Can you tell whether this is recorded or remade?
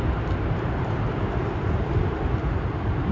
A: recorded